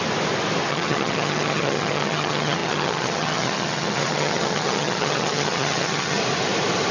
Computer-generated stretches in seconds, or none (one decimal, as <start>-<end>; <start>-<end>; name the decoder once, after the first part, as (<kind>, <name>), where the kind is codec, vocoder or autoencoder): 0.7-6.2 (vocoder, HiFi-GAN)